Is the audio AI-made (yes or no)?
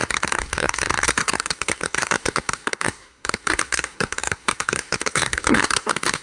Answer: yes